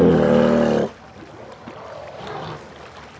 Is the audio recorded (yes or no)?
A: yes